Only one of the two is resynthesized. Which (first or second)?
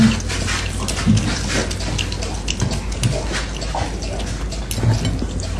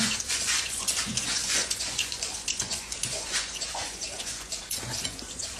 second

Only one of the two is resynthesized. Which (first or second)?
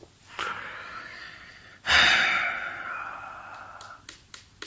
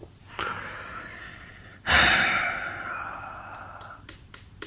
second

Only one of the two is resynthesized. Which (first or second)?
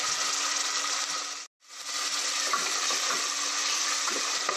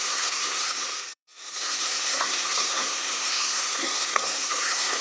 second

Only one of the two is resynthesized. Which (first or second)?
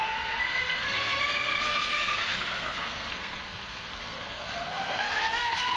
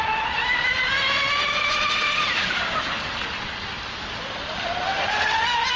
first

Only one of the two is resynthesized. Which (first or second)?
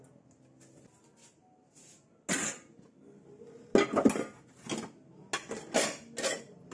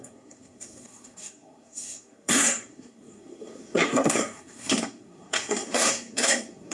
second